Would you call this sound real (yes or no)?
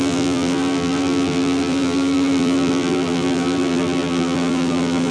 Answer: no